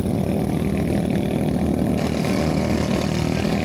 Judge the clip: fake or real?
real